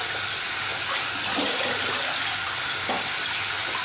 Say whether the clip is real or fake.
fake